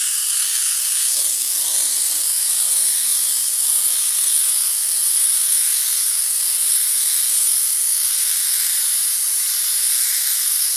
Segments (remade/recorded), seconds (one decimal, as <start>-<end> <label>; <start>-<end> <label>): 0.0-8.7 remade; 8.7-9.8 recorded; 9.8-10.8 remade